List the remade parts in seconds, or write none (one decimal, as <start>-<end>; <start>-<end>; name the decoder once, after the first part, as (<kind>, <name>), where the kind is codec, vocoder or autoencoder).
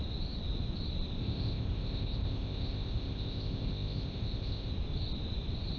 1.2-4.7 (codec, ZipCodec)